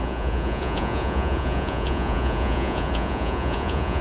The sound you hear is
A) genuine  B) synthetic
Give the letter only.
B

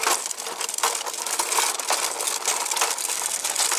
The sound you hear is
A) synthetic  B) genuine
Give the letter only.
B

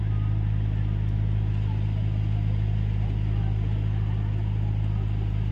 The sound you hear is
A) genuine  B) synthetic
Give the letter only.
A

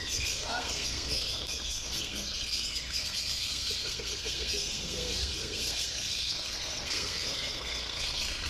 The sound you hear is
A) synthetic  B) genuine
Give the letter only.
A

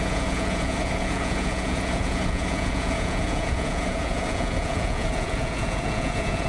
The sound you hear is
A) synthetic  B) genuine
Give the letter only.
A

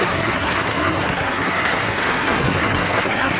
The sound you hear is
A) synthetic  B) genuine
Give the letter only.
A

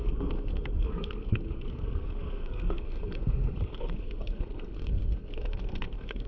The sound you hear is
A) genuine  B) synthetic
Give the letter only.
B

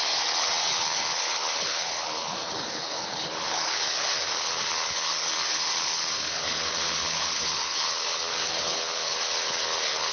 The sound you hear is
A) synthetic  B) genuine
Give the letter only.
A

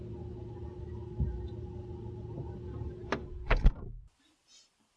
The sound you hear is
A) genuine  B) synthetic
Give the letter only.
A